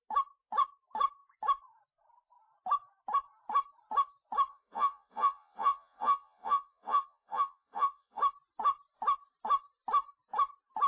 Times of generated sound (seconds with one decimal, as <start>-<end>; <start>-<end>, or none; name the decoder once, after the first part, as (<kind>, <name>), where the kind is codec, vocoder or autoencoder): 4.5-8.2 (vocoder, Vocos)